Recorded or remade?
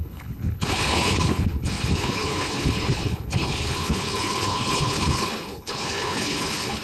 remade